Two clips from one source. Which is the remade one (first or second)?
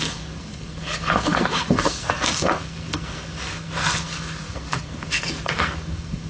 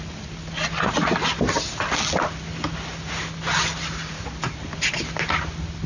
first